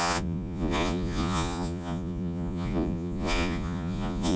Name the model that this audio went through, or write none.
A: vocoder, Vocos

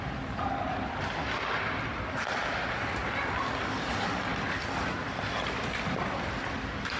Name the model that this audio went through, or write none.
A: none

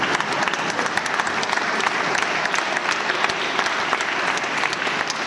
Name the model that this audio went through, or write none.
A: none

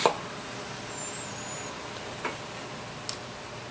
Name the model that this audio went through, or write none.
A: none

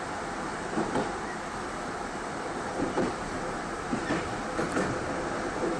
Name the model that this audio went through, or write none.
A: none